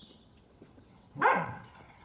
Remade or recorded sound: remade